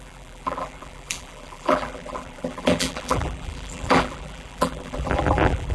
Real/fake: fake